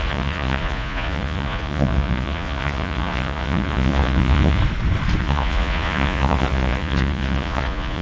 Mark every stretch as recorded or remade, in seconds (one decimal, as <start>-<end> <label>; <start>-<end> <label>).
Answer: 0.0-4.6 remade; 4.6-5.2 recorded; 5.2-8.0 remade

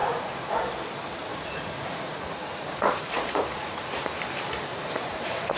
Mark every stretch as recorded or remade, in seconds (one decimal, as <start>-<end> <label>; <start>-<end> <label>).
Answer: 0.0-0.6 remade; 0.6-1.3 recorded; 1.3-3.9 remade; 3.9-4.7 recorded; 4.7-5.6 remade

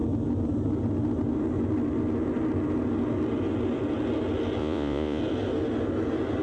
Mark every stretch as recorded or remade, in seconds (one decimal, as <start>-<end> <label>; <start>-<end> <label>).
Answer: 0.0-4.6 recorded; 4.6-5.2 remade; 5.2-6.4 recorded